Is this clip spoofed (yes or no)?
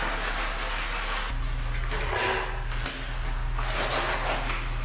no